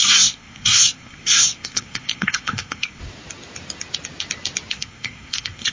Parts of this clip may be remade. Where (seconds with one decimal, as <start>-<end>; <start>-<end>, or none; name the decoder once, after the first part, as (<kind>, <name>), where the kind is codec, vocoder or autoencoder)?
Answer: 0.0-3.0 (codec, SNAC); 4.7-5.7